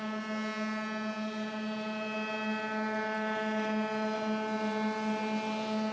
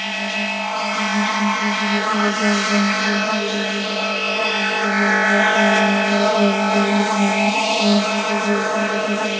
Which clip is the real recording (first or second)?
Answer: first